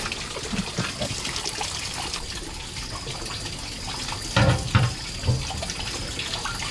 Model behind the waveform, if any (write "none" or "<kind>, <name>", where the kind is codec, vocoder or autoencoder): none